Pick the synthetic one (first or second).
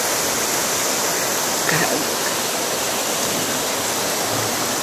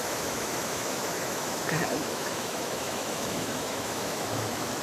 second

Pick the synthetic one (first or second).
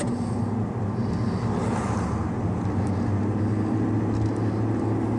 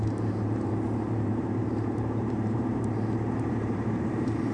second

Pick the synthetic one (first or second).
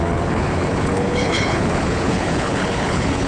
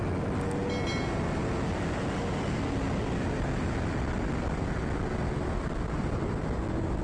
first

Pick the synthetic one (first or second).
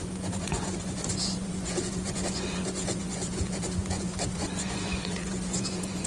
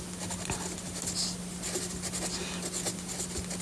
first